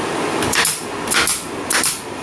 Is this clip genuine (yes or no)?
yes